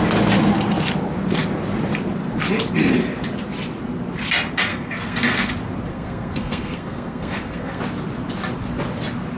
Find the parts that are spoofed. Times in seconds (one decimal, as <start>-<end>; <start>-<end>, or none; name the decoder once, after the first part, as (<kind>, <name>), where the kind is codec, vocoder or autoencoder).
4.7-5.5 (codec, SNAC); 5.9-7.8